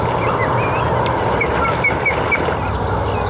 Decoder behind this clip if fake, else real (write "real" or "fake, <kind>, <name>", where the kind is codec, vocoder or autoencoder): real